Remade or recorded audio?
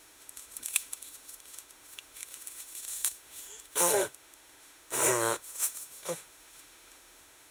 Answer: remade